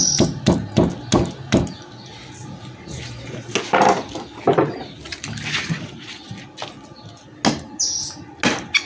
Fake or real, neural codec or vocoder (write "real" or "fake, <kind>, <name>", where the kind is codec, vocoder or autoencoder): real